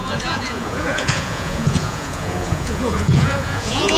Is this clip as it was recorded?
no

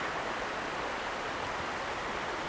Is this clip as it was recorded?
yes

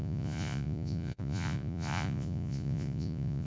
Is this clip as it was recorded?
no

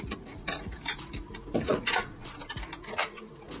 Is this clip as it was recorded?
no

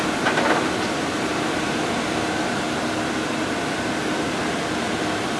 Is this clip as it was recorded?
yes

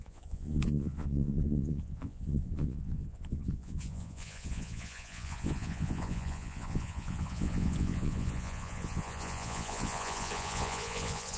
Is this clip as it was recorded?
no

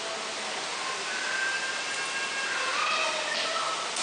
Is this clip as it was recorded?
yes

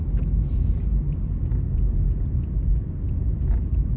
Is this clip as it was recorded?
yes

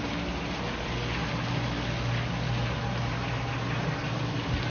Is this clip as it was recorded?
yes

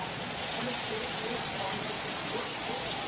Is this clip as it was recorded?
no